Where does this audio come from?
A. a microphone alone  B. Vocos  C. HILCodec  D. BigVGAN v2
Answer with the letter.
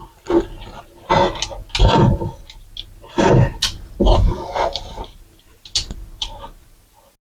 A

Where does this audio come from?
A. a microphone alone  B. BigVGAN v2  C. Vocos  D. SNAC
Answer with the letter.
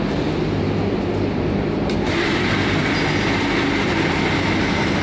A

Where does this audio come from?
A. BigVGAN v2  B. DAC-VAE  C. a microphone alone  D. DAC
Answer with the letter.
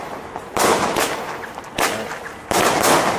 C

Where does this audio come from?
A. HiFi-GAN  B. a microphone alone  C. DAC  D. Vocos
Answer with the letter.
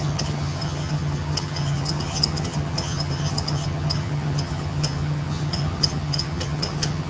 A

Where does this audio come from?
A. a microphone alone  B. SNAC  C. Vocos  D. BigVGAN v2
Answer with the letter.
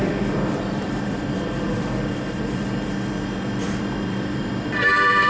D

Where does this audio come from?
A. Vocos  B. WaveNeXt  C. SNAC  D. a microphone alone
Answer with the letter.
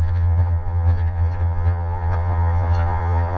A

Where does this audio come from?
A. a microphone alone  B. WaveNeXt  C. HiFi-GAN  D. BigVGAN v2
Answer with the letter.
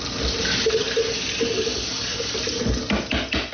A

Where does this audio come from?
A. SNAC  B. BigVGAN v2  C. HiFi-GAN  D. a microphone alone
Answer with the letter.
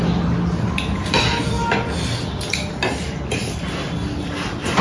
D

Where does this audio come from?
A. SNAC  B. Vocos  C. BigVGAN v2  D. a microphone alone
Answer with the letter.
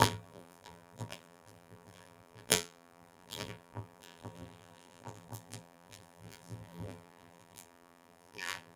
C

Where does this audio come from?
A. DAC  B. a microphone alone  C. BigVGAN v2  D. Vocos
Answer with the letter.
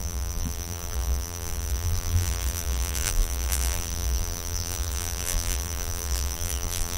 C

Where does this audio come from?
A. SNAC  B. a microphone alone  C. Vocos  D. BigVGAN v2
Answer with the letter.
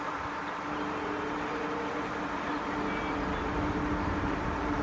B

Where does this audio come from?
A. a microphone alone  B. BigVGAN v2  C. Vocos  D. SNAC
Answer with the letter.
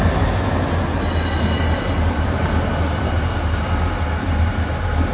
A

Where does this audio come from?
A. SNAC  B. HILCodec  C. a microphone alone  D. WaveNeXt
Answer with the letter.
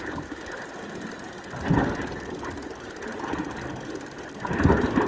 C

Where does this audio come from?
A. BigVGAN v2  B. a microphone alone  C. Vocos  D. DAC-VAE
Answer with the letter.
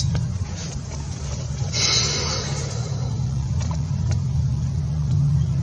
C